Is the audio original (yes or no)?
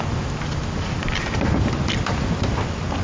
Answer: yes